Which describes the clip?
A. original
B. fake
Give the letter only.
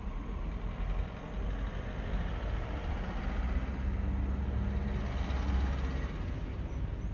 A